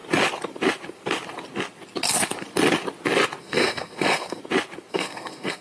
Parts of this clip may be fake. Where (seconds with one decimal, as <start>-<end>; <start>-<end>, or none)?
3.4-4.4; 4.9-5.6